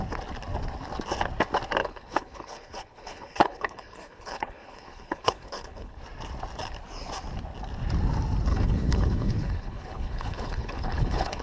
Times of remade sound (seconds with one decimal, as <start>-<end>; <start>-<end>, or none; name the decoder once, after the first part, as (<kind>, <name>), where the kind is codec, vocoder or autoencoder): 1.8-6.0 (codec, HILCodec); 8.5-11.4